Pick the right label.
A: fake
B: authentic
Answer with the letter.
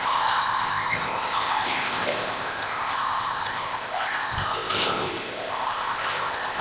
A